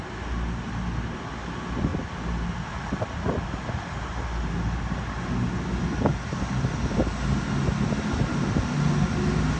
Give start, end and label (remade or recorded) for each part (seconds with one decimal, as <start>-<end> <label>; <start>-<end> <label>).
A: 0.0-9.6 recorded